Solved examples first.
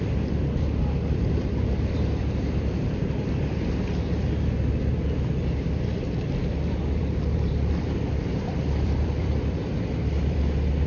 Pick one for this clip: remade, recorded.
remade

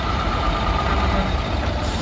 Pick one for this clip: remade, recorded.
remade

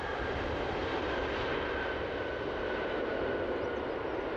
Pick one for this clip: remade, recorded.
recorded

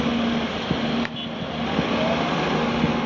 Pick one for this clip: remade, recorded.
remade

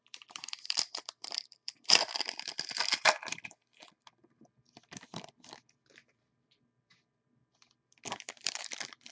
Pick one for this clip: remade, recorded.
remade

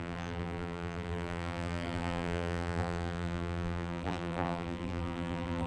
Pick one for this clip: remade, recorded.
remade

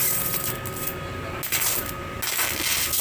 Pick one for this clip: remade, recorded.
recorded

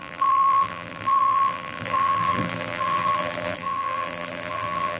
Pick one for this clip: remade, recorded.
remade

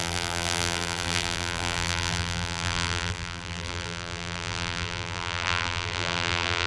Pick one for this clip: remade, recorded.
remade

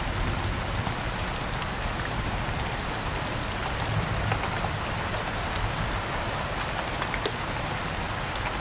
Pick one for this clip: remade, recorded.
recorded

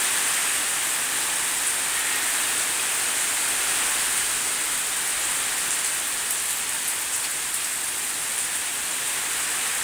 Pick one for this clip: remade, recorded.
recorded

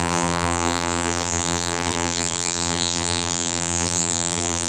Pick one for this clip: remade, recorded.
remade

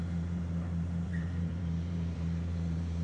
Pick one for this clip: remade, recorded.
remade